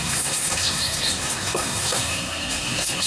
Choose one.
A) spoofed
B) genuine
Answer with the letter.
A